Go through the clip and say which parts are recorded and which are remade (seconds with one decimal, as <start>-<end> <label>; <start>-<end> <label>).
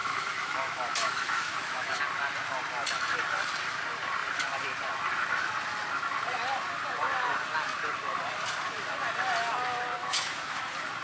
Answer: 0.0-2.0 remade; 2.0-10.0 recorded; 10.0-10.6 remade; 10.6-11.0 recorded